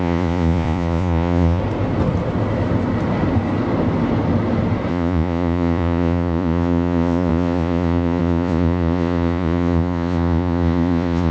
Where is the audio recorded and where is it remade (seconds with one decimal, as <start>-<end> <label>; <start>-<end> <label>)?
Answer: 0.0-1.6 remade; 1.6-4.9 recorded; 4.9-11.3 remade